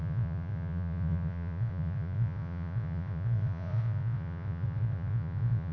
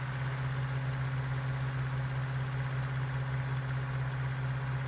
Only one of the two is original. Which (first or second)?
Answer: second